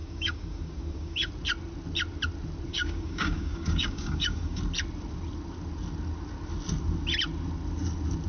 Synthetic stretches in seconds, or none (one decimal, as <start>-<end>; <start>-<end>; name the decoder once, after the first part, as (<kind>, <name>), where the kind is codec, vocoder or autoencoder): 0.0-1.3 (codec, DAC); 2.7-4.6